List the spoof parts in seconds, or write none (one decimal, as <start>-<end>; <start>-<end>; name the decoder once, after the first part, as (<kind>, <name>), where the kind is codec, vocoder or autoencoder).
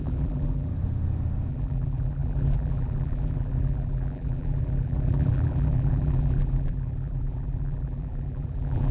0.0-0.7 (vocoder, BigVGAN v2); 1.5-8.9